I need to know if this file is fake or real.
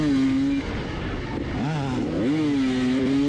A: real